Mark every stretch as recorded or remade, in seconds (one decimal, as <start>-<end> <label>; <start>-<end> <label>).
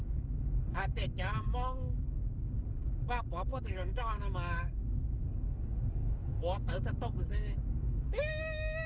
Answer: 0.0-8.9 remade